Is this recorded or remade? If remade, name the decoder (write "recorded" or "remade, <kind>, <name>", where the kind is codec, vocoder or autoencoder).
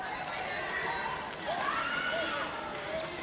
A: recorded